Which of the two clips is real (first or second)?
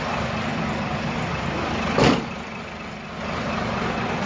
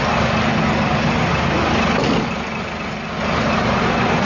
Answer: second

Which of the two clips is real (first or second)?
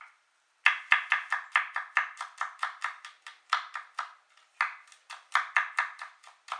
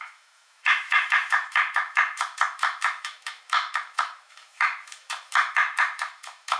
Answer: first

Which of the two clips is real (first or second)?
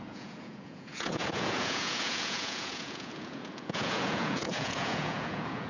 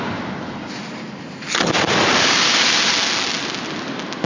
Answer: second